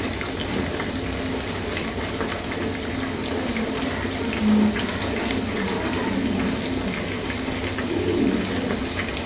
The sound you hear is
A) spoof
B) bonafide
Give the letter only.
B